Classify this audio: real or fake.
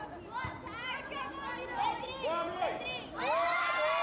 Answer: real